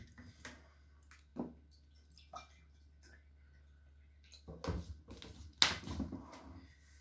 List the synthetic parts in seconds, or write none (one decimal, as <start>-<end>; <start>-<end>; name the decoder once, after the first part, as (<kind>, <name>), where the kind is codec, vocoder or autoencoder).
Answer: none